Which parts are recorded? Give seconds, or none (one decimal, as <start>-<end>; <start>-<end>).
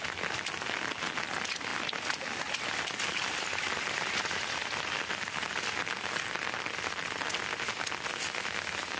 0.0-9.0